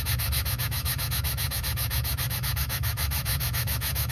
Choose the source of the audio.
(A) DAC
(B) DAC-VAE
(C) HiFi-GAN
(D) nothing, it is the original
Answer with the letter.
B